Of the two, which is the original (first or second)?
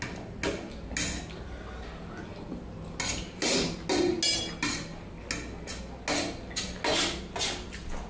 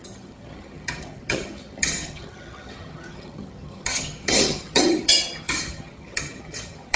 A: first